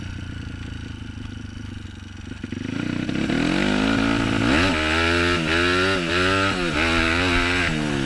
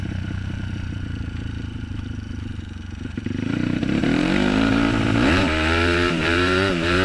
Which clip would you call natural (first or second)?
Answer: first